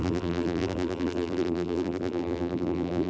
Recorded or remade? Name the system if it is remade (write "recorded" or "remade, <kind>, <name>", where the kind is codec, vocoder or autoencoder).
remade, vocoder, BigVGAN v2